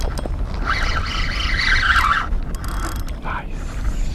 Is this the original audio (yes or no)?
yes